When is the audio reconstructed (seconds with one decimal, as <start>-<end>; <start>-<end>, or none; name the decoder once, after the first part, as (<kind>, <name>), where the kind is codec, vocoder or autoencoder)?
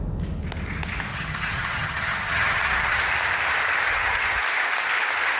1.1-3.0 (vocoder, HiFi-GAN); 3.9-4.4